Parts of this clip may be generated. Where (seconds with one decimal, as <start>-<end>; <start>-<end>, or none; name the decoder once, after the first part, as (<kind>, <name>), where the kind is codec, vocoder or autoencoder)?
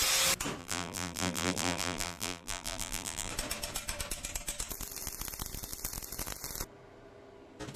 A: 0.6-3.3 (vocoder, BigVGAN v2)